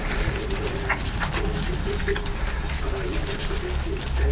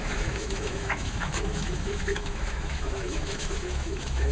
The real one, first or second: first